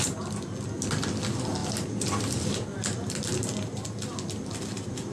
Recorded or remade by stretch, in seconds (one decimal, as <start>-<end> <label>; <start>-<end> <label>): 0.0-5.1 recorded